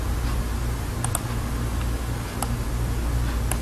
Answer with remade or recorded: recorded